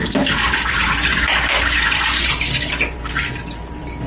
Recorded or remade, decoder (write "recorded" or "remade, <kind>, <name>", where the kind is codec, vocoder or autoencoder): remade, vocoder, BigVGAN v2